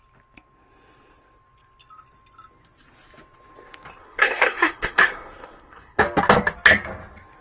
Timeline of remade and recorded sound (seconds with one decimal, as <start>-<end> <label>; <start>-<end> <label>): 0.0-4.0 recorded; 4.0-6.0 remade; 6.0-7.4 recorded

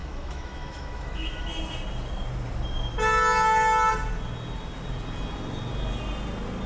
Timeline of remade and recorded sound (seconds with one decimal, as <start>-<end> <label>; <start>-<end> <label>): 0.0-1.5 remade; 1.5-6.7 recorded

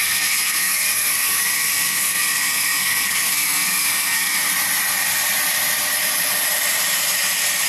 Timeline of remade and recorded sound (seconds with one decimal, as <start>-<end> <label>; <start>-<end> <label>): 0.0-4.4 remade; 4.4-7.7 recorded

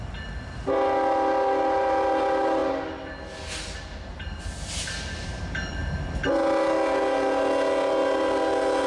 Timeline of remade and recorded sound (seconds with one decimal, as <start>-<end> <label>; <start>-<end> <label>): 0.0-8.9 recorded

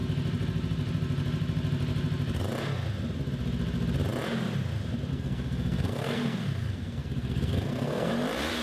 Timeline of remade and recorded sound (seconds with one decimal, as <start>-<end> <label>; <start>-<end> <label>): 0.0-5.1 recorded; 5.1-8.1 remade; 8.1-8.6 recorded